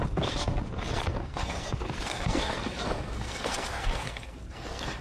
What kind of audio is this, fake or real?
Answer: fake